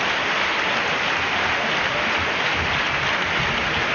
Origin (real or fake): real